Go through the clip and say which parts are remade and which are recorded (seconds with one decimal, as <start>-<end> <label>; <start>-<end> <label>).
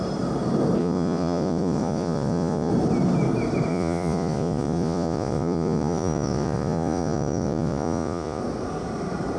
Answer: 0.0-0.8 recorded; 0.8-2.7 remade; 2.7-3.7 recorded; 3.7-8.4 remade; 8.4-9.4 recorded